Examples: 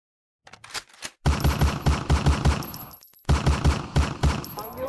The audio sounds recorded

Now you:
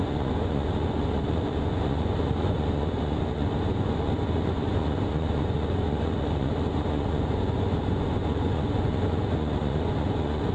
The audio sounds remade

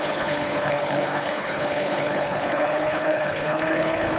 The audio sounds remade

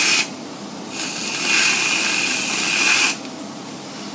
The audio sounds recorded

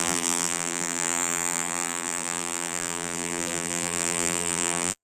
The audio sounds remade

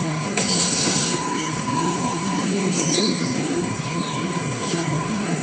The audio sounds remade